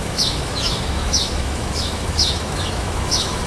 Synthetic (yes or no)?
yes